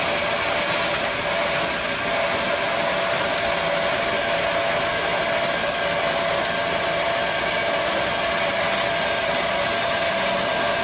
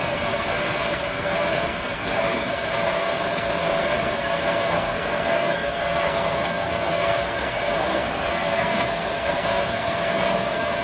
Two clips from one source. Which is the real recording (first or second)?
first